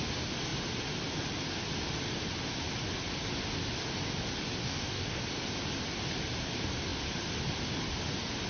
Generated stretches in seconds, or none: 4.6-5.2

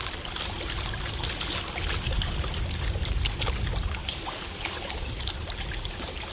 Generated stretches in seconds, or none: 4.0-5.3

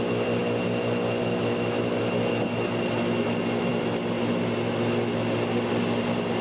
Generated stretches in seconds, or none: none

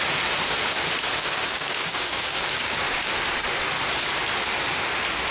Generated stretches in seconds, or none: 1.2-3.1